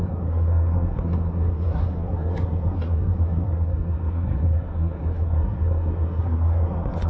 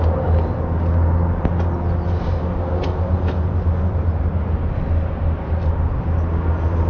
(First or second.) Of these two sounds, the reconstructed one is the first